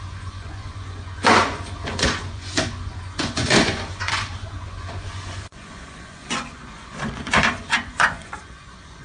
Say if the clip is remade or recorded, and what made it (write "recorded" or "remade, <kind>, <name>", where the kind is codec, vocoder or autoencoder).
remade, vocoder, Vocos